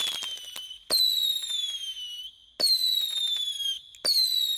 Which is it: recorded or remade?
recorded